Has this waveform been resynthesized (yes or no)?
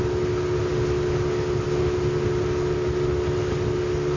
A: no